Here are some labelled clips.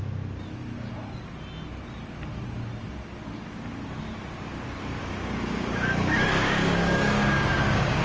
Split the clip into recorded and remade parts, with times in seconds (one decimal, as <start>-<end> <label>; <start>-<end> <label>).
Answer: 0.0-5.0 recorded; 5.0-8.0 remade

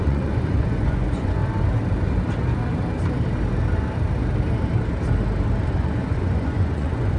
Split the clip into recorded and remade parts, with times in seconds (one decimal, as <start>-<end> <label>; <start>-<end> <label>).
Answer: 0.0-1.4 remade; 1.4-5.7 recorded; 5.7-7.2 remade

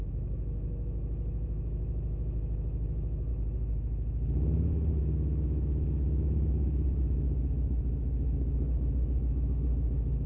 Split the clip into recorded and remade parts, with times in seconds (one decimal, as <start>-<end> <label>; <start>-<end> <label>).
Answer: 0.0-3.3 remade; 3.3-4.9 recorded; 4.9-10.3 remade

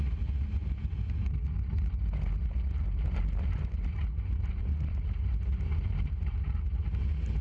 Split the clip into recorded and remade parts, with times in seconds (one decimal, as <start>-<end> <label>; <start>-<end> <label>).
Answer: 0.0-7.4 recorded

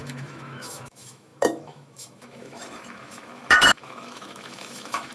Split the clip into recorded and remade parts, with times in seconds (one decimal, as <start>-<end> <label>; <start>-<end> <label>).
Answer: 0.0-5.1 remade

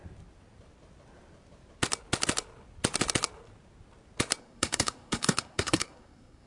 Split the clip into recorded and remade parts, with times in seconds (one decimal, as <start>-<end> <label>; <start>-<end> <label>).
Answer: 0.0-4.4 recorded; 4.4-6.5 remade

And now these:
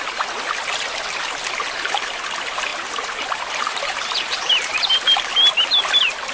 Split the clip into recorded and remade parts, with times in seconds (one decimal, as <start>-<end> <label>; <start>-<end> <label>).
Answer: 0.0-2.7 recorded; 2.7-4.0 remade; 4.0-6.3 recorded